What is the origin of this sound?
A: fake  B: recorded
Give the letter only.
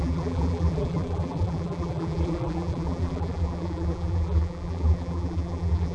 A